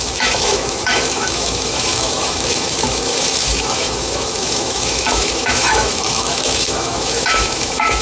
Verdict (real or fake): fake